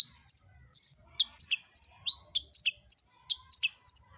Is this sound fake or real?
real